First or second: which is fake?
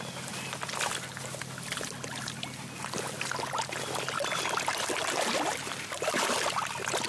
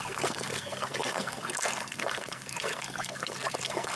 second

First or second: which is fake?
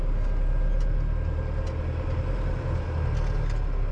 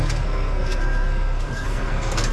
second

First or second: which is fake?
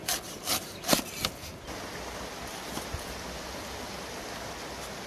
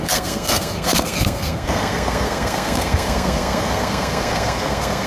second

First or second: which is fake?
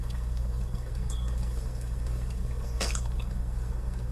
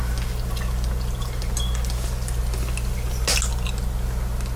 first